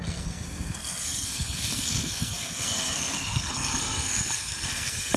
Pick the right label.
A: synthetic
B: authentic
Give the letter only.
A